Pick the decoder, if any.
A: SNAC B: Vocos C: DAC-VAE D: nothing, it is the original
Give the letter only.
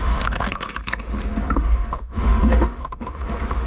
C